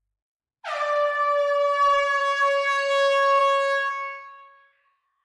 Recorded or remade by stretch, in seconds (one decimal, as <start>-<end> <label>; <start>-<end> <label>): 0.0-0.4 remade; 0.4-2.2 recorded; 2.2-3.4 remade; 3.4-3.9 recorded; 3.9-5.2 remade